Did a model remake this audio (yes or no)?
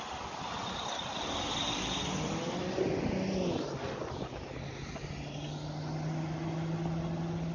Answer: no